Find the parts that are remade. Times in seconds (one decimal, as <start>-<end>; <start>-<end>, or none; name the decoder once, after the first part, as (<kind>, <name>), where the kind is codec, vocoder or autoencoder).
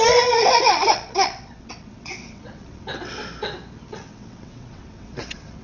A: 0.0-3.2 (vocoder, WaveNeXt); 3.9-5.6